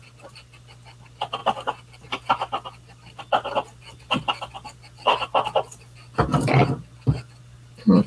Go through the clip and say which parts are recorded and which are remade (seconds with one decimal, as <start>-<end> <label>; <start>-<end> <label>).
0.0-8.1 recorded